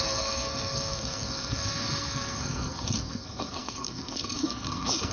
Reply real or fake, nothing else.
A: fake